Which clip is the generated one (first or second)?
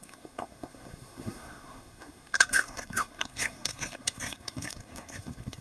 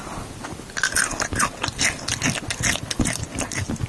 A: first